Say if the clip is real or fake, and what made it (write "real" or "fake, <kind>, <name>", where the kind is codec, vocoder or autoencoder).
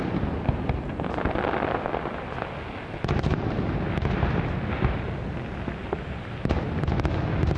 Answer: real